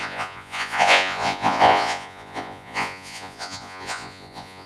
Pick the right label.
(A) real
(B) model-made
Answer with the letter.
B